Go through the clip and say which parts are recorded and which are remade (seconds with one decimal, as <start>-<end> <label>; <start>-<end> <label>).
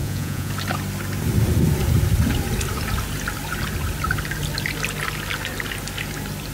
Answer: 0.0-0.5 remade; 0.5-6.5 recorded